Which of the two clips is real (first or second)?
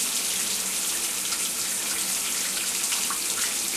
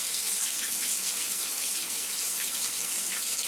first